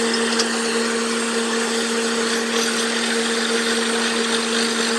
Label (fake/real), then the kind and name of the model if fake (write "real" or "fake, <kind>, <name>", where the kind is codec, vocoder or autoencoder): real